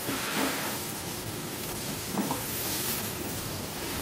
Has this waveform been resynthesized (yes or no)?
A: yes